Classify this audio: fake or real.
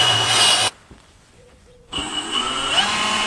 fake